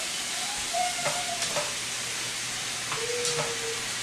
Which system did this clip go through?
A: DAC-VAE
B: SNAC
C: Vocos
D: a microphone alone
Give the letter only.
D